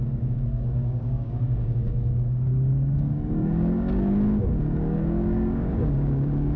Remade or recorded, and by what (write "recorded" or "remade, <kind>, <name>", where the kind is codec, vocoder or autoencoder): remade, codec, DAC